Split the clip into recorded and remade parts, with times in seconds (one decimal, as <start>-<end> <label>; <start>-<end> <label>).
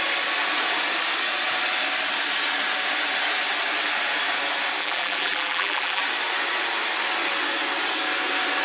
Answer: 0.0-4.8 recorded; 4.8-6.0 remade; 6.0-8.6 recorded